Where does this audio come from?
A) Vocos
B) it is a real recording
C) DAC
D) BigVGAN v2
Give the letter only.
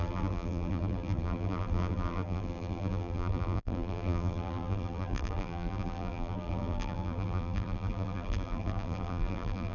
D